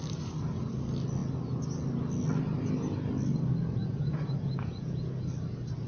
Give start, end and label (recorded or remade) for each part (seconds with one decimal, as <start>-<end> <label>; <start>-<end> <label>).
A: 0.0-3.8 recorded; 3.8-5.1 remade; 5.1-5.9 recorded